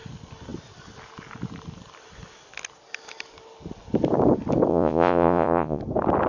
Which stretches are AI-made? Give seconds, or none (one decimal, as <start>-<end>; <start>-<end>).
4.7-5.8